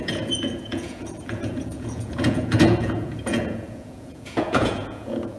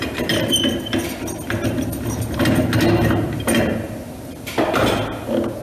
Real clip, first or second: second